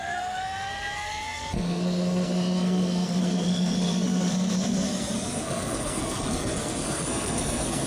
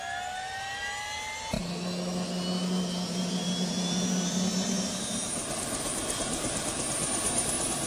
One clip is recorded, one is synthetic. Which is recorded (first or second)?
second